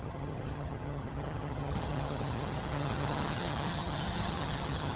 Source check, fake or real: fake